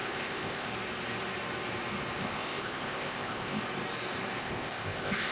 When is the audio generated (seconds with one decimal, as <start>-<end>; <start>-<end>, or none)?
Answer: 0.0-0.7; 2.2-3.6; 4.4-5.3